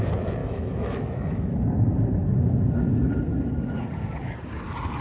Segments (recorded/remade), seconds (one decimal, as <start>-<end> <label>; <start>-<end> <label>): 0.0-0.4 recorded; 0.4-1.6 remade; 1.6-5.0 recorded

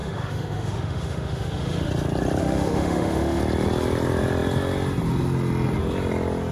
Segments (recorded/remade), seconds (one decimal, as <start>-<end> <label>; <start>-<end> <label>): 0.0-1.9 remade; 1.9-2.4 recorded; 2.4-3.4 remade; 3.4-6.5 recorded

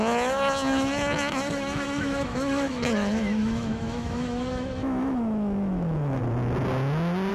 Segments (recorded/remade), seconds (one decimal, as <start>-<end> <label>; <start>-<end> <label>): 0.0-6.2 remade; 6.2-7.3 recorded